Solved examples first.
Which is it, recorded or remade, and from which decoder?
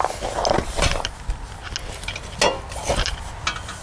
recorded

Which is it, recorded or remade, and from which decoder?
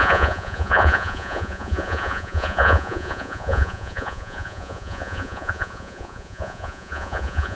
remade, vocoder, Vocos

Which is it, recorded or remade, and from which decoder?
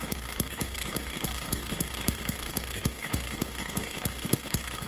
remade, codec, DAC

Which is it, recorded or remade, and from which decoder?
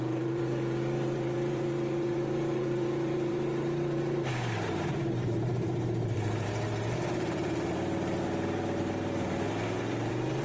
remade, vocoder, BigVGAN v2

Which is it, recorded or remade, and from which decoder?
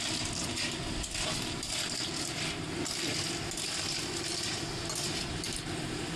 remade, vocoder, BigVGAN v2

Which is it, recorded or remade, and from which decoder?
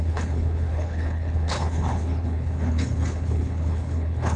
remade, codec, HILCodec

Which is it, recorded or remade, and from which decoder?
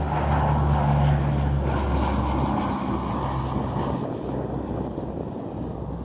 recorded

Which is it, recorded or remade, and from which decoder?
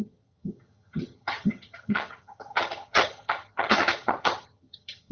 remade, vocoder, HiFi-GAN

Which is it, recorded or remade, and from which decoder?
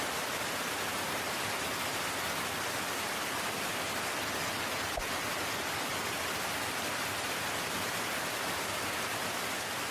recorded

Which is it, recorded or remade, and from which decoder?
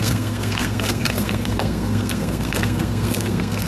remade, codec, SNAC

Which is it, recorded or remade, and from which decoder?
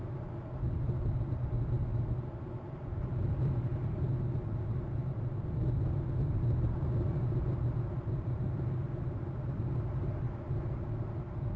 recorded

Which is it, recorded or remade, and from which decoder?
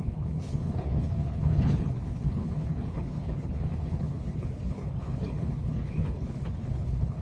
remade, codec, HILCodec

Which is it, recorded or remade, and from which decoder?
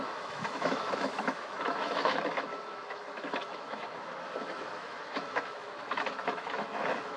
remade, autoencoder, DAC-VAE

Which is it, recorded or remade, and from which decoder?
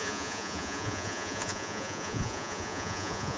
remade, vocoder, Vocos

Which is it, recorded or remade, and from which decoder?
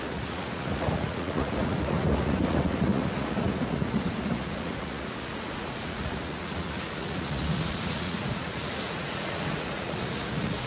remade, vocoder, Vocos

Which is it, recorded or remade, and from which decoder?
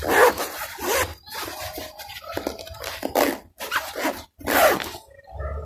remade, vocoder, BigVGAN v2